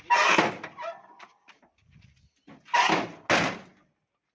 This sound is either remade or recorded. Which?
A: recorded